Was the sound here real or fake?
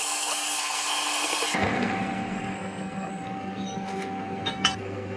fake